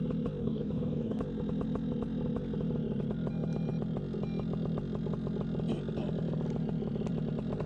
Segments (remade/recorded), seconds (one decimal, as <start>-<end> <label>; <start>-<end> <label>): 0.0-0.4 recorded; 0.4-1.2 remade; 1.2-7.7 recorded